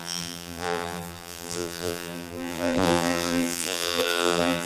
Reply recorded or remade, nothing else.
remade